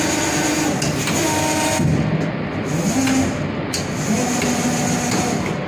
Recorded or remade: recorded